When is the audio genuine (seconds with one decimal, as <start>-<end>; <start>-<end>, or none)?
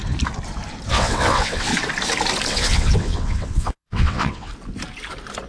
0.0-0.9; 1.7-2.5; 4.5-5.5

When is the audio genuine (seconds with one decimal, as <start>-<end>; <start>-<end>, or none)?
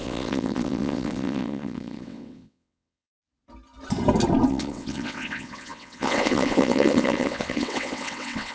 3.1-4.5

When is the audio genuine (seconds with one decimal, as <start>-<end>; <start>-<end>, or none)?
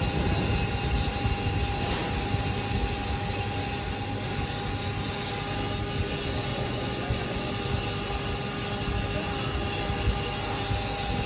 0.0-6.5; 7.5-11.3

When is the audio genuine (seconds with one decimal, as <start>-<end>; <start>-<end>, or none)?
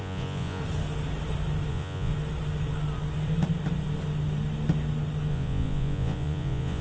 0.6-1.7; 2.1-5.3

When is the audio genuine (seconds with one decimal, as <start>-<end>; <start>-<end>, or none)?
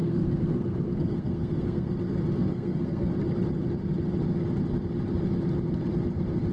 1.9-2.5; 3.1-6.5